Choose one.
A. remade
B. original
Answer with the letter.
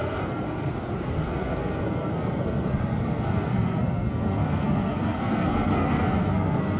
A